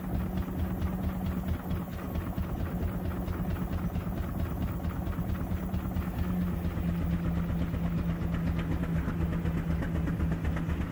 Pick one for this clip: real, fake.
real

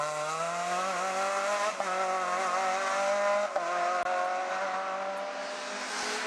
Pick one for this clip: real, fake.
real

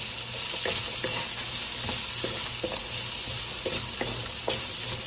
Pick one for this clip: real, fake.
real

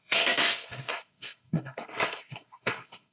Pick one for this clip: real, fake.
fake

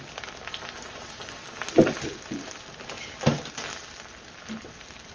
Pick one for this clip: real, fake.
real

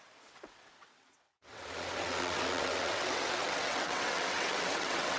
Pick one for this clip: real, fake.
fake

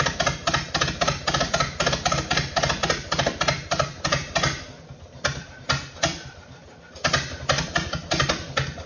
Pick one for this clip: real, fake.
real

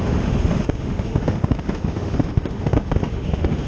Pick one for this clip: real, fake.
fake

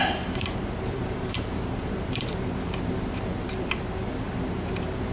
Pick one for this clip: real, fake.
fake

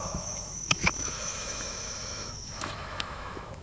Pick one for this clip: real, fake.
fake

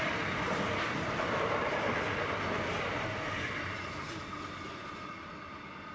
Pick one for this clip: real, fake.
real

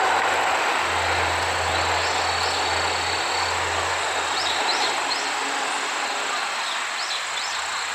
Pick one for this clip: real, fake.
real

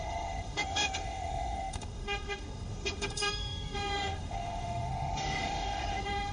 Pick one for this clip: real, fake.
fake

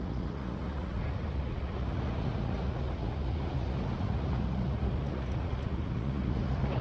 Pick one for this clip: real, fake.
fake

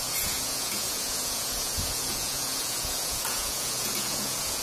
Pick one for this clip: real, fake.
fake